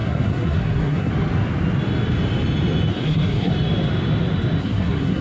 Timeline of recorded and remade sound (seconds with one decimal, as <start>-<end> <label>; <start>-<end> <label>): 0.0-1.1 remade; 1.1-2.9 recorded; 2.9-3.5 remade; 3.5-4.6 recorded; 4.6-5.2 remade